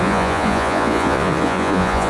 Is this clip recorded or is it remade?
remade